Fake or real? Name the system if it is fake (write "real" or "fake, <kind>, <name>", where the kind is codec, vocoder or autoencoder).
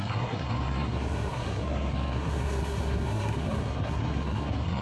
fake, codec, SNAC